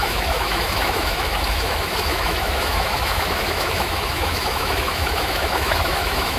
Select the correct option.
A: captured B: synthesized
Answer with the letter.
B